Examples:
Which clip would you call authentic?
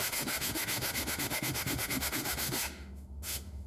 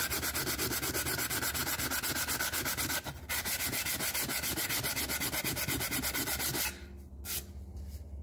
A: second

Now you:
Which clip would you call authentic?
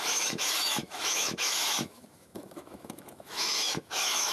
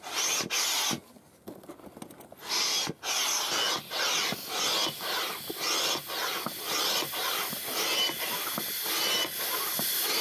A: second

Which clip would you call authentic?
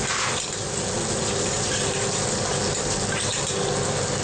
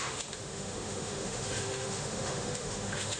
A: first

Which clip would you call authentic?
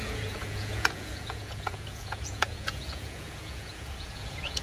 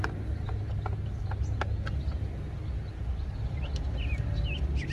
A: second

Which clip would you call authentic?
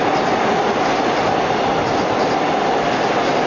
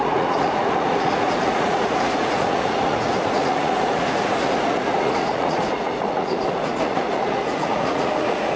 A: first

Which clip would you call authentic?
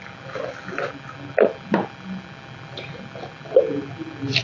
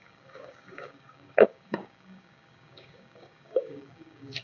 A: first